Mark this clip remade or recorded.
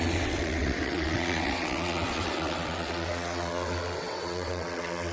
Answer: remade